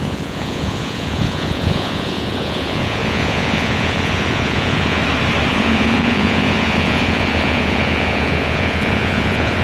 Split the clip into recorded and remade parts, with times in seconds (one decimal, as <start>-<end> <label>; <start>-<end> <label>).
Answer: 0.0-5.0 remade; 5.0-5.5 recorded; 5.5-9.6 remade